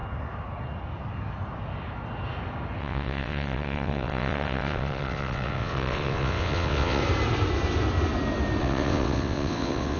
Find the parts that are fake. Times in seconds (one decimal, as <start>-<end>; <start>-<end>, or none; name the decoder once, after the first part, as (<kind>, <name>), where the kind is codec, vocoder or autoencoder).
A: 2.8-7.0 (vocoder, WaveNeXt); 8.6-10.0